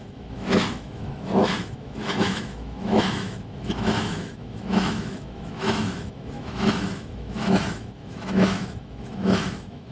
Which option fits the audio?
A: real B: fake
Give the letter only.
B